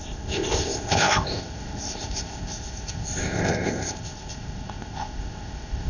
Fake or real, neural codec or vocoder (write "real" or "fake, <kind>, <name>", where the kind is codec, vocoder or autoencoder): fake, codec, ZipCodec